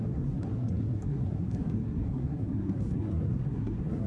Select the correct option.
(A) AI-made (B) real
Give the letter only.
A